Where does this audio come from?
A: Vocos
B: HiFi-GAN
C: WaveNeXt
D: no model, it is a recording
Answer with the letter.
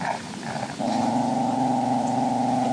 D